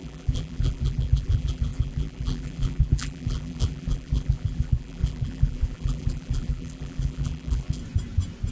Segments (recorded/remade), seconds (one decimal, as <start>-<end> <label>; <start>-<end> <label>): 0.0-7.8 remade; 7.8-8.5 recorded